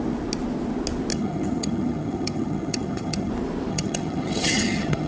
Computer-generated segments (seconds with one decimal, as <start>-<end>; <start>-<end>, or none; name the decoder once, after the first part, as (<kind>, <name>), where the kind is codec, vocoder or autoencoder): 1.1-3.3 (vocoder, HiFi-GAN); 3.7-5.1